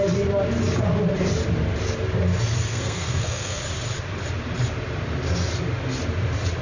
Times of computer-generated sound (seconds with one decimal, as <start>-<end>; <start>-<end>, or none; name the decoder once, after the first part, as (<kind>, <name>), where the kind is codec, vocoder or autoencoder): 2.7-3.6 (codec, SNAC)